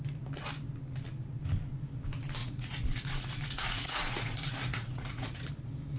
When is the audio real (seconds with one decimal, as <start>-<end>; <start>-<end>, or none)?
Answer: 0.0-2.4; 5.5-6.0